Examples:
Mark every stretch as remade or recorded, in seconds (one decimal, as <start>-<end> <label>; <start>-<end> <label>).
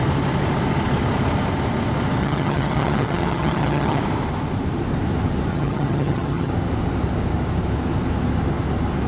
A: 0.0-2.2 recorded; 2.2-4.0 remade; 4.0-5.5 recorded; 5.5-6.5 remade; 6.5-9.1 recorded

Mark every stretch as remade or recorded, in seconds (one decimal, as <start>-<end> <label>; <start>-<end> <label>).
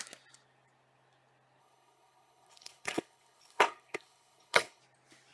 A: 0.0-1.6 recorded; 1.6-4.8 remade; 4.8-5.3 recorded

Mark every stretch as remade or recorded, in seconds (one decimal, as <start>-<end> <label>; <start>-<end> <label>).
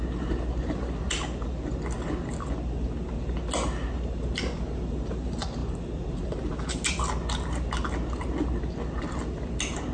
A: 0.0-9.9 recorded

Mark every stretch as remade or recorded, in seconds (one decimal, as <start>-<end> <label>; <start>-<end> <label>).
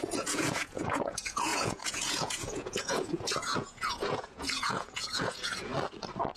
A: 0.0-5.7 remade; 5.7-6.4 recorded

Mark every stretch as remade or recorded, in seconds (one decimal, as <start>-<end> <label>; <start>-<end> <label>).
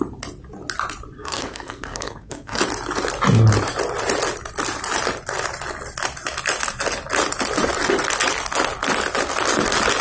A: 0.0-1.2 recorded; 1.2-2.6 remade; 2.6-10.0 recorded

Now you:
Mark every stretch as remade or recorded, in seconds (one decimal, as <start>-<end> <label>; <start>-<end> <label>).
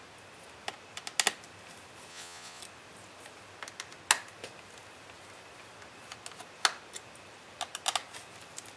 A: 0.0-2.1 recorded; 2.1-2.6 remade; 2.6-8.8 recorded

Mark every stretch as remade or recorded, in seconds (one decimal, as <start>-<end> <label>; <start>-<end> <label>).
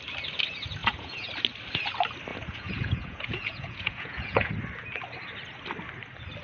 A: 0.0-0.8 recorded; 0.8-1.3 remade; 1.3-2.3 recorded; 2.3-4.5 remade; 4.5-6.4 recorded